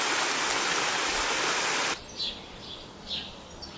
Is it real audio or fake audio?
real